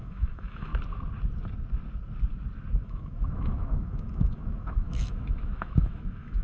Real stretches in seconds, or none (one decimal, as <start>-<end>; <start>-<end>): 0.7-2.8